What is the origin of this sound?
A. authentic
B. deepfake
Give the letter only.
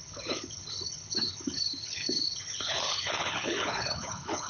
B